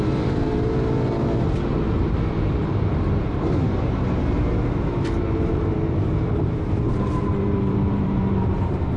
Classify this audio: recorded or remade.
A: remade